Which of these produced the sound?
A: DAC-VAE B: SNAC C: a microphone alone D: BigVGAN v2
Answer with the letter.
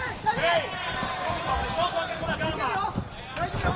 C